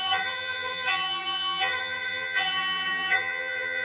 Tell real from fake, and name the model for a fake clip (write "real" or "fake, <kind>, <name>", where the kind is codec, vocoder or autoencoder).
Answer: fake, vocoder, HiFi-GAN